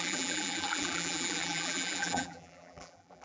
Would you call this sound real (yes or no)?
no